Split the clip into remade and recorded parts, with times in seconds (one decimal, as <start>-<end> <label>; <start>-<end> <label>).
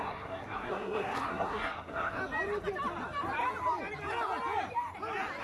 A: 0.0-2.2 remade; 2.2-5.4 recorded